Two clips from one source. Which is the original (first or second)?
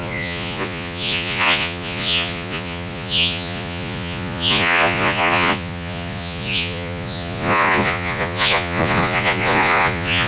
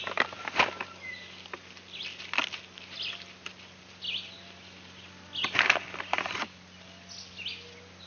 second